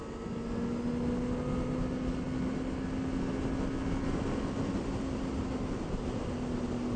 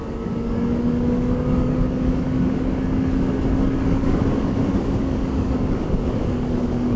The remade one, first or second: second